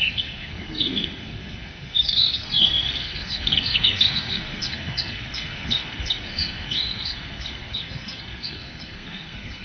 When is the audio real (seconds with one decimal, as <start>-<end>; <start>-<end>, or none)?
none